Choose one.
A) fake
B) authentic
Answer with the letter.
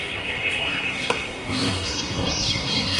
A